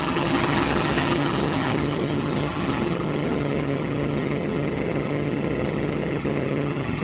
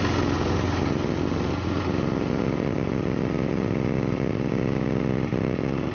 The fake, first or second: first